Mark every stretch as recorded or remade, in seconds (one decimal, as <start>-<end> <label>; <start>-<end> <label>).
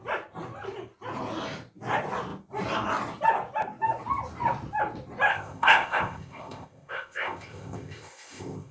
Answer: 0.0-5.3 recorded; 5.3-8.7 remade